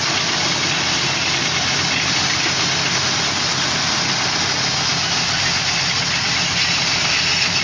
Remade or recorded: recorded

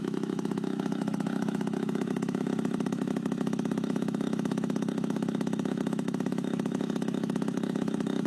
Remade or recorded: remade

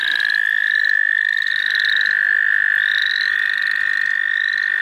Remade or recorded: recorded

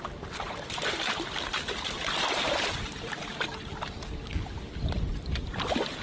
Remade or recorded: recorded